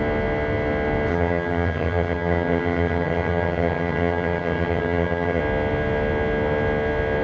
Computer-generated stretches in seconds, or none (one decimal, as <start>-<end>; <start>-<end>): 1.1-5.4